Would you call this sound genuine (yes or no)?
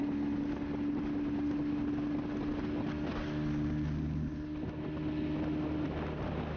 yes